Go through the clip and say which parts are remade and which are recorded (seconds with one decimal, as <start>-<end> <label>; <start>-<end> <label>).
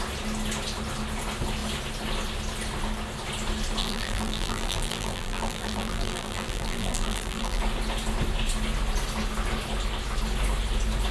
0.0-3.8 recorded; 3.8-7.6 remade; 7.6-11.1 recorded